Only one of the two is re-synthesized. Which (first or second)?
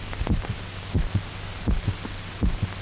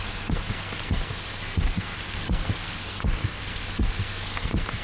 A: second